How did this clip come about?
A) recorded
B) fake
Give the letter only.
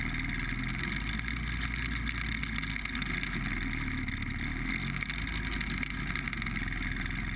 A